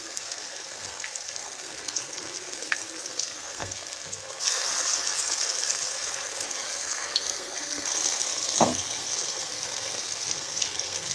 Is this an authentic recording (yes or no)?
no